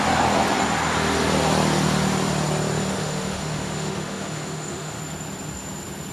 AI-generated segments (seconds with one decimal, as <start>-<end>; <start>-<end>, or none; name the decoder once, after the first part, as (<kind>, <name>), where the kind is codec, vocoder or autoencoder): 2.9-5.0 (autoencoder, DAC-VAE)